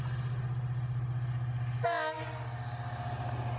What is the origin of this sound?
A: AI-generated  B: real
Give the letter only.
B